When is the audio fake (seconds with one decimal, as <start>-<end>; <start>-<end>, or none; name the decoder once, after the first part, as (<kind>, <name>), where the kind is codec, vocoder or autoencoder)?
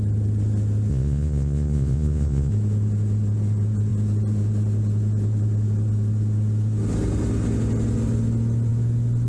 0.9-2.5 (vocoder, Vocos)